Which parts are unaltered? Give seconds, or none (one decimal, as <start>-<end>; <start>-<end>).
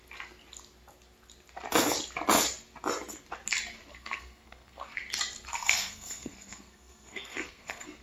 0.0-3.9; 5.0-5.5